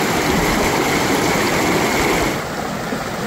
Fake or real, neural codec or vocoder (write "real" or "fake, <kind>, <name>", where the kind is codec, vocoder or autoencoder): real